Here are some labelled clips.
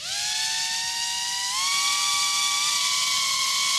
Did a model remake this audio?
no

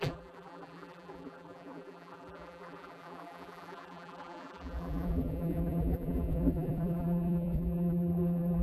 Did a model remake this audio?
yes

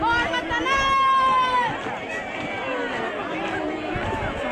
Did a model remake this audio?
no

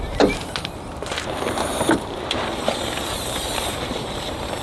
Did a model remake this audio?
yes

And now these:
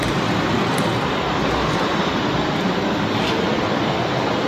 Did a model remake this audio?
no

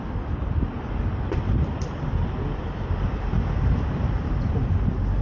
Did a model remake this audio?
yes